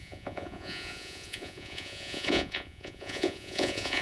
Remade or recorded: remade